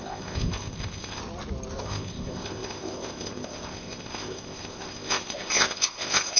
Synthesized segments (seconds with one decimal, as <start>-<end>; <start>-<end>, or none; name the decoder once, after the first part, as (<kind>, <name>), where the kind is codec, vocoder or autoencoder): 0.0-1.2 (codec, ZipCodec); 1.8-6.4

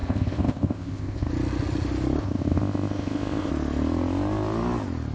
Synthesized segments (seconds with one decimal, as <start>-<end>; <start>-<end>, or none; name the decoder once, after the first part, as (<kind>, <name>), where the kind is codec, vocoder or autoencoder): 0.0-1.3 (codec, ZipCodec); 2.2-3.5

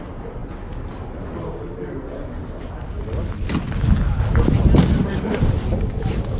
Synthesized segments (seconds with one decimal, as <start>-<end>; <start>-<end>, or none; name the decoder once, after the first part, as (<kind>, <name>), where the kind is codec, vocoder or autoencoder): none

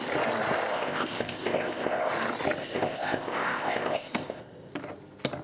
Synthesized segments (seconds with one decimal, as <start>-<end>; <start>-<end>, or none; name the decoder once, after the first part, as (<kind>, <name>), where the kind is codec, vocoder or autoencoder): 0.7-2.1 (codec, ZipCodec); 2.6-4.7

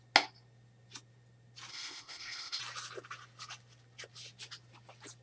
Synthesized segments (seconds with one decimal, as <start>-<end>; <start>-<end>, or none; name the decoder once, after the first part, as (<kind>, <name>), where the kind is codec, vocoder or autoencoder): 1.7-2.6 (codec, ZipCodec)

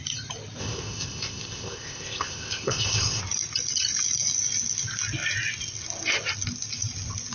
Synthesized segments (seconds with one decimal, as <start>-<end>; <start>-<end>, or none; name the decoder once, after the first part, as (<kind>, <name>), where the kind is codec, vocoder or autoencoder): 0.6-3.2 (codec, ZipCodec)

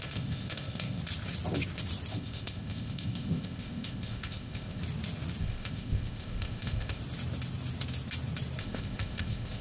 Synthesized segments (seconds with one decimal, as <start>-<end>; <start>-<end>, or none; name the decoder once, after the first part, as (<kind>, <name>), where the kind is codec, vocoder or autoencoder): 0.0-1.0 (codec, ZipCodec); 2.1-4.8; 5.4-7.0; 8.6-9.6